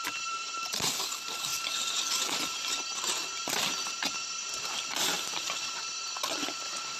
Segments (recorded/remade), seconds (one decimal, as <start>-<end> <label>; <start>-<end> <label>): 0.0-7.0 recorded